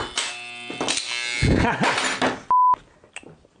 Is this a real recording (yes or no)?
yes